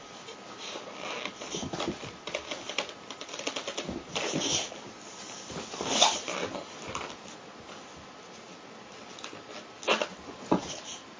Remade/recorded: recorded